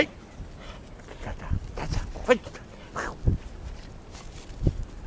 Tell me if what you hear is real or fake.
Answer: real